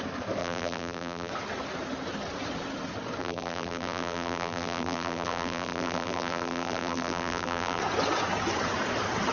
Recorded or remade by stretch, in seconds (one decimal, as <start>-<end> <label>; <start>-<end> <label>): 0.0-0.4 recorded; 0.4-1.3 remade; 1.3-3.2 recorded; 3.2-7.8 remade; 7.8-9.3 recorded